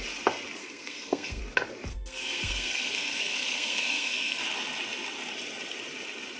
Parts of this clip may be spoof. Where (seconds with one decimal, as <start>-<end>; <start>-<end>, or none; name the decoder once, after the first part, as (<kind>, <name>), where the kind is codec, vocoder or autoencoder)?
0.6-1.4 (codec, SNAC); 1.9-4.4